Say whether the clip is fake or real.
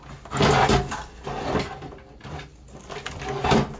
real